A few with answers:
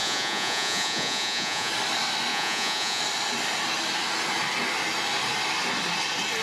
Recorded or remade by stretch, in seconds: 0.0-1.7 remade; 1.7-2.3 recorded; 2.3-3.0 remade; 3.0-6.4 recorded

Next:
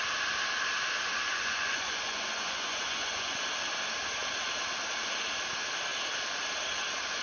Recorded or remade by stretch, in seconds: 0.0-1.3 recorded; 1.3-3.4 remade; 3.4-7.2 recorded

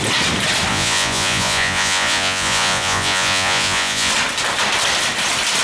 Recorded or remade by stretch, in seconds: 0.0-0.7 recorded; 0.7-4.1 remade; 4.1-5.6 recorded

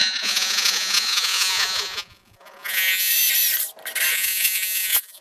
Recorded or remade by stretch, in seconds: 0.0-3.1 remade; 3.1-4.1 recorded; 4.1-5.2 remade